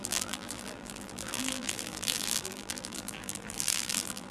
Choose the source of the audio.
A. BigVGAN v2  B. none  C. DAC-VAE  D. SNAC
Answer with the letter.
A